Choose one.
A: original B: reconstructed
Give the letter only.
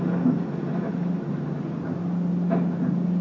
A